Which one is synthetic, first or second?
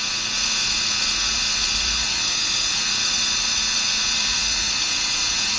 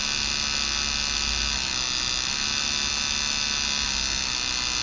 first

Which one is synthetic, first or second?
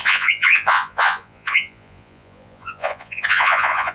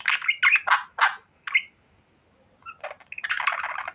first